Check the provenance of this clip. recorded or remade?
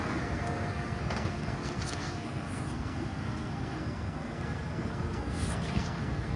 remade